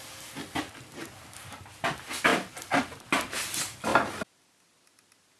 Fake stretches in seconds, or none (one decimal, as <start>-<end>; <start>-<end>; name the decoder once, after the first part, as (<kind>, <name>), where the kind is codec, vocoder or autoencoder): none